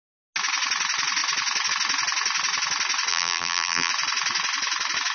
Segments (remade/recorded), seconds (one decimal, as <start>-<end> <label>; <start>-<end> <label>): 0.0-3.1 recorded; 3.1-3.9 remade; 3.9-5.1 recorded